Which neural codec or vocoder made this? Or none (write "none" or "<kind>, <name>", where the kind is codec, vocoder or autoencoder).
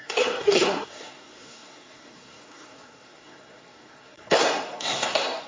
codec, SNAC